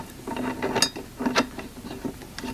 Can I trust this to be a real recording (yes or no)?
yes